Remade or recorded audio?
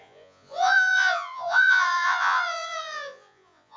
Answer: remade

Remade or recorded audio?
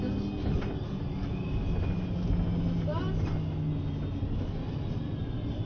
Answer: recorded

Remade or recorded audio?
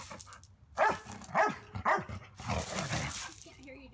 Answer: recorded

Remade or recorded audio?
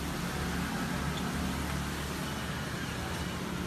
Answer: recorded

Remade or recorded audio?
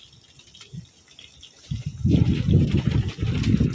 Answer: recorded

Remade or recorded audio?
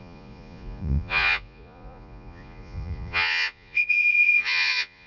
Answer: remade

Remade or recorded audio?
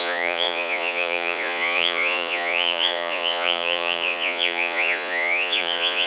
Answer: remade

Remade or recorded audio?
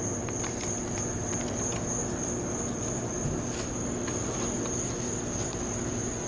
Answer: recorded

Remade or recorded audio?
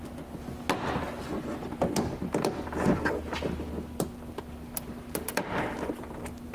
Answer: recorded